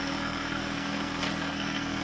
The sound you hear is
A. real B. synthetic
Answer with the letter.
B